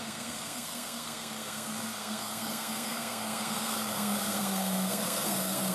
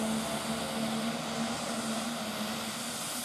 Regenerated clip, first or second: first